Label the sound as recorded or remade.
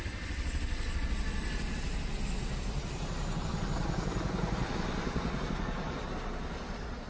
recorded